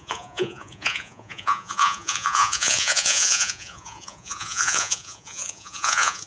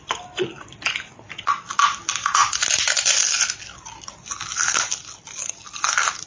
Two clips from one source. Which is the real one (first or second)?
second